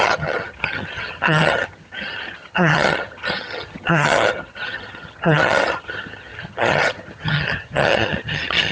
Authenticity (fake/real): fake